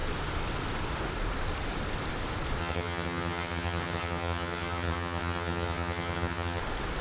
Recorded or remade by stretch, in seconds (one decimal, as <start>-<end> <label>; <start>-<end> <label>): 0.0-2.6 recorded; 2.6-6.6 remade; 6.6-7.0 recorded